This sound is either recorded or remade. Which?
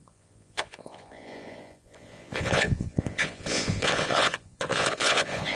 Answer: remade